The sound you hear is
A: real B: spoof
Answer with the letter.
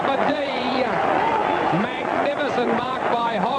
B